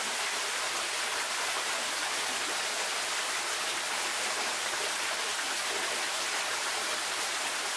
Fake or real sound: real